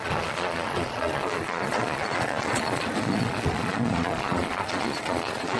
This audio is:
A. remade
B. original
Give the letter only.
A